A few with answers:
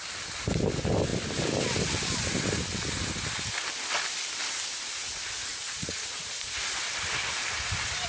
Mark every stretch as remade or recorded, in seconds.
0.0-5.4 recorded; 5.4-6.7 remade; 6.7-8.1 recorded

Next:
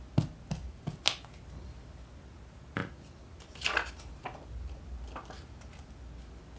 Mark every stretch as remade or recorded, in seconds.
0.0-6.6 recorded

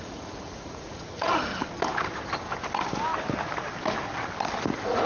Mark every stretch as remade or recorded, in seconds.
0.0-1.5 remade; 1.5-4.6 recorded; 4.6-5.1 remade

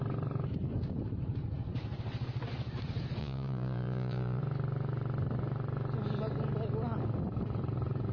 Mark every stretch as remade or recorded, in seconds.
0.0-3.2 recorded; 3.2-4.4 remade; 4.4-8.1 recorded

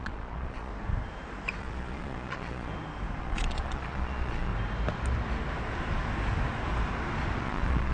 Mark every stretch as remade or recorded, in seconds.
0.0-0.7 remade; 0.7-1.6 recorded; 1.6-2.7 remade; 2.7-3.2 recorded; 3.2-4.5 remade; 4.5-7.4 recorded; 7.4-7.9 remade

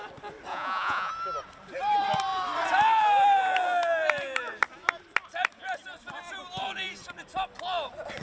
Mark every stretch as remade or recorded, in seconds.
0.0-0.5 recorded; 0.5-1.1 remade; 1.1-8.2 recorded